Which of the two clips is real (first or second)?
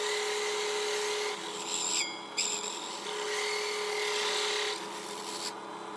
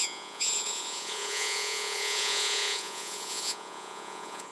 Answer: first